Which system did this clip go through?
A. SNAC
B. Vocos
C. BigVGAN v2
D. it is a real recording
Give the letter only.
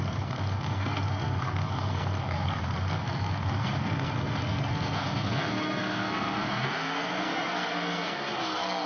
A